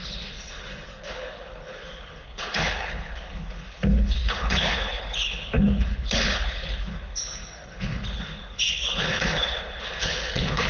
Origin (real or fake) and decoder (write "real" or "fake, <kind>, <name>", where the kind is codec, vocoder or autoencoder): fake, codec, HILCodec